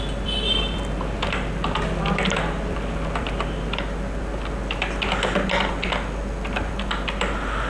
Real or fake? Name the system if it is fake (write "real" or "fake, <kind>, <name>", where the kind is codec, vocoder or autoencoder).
real